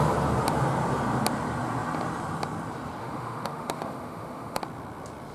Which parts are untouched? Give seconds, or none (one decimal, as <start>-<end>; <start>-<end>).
0.0-3.0; 4.6-5.3